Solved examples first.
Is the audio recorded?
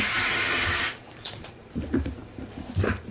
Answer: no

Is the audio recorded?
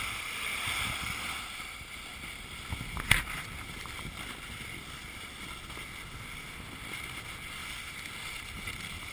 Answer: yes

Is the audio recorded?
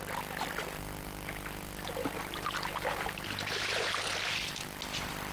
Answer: yes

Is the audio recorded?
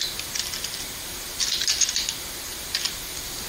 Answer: no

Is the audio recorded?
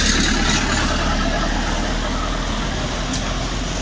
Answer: yes